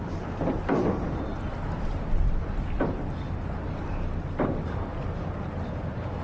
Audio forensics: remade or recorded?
recorded